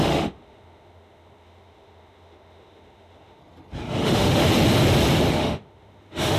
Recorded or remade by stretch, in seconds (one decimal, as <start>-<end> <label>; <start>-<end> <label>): 0.0-3.4 remade; 3.4-3.9 recorded; 3.9-4.4 remade; 4.4-5.3 recorded; 5.3-6.4 remade